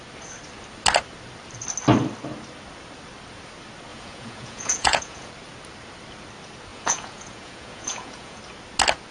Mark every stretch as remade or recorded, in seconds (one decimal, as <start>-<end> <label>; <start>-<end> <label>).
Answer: 0.0-3.9 recorded; 3.9-5.3 remade; 5.3-6.7 recorded; 6.7-8.4 remade; 8.4-9.1 recorded